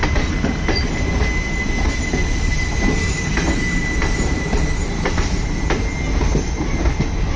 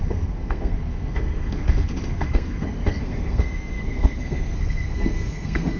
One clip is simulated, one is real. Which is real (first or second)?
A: first